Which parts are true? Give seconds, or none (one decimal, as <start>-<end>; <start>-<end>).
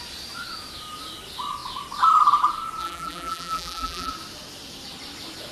0.0-2.8; 4.1-5.5